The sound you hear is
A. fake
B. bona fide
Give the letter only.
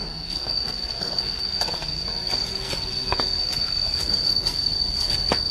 A